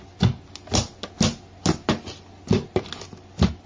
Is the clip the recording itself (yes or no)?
yes